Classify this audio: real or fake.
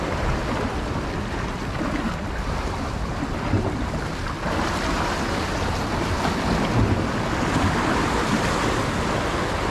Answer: real